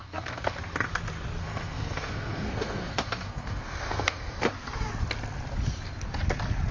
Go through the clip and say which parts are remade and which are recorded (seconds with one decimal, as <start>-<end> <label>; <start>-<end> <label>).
0.0-0.6 remade; 0.6-1.4 recorded; 1.4-4.5 remade; 4.5-6.7 recorded